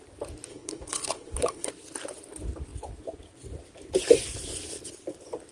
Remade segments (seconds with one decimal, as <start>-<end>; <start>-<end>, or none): 0.5-1.7